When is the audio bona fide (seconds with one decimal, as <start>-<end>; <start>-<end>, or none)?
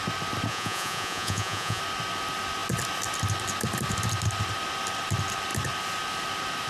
0.0-0.5; 1.8-6.7